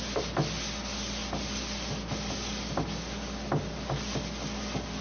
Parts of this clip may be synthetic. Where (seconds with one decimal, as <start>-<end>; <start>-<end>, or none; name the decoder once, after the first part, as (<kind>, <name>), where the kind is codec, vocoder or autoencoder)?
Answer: none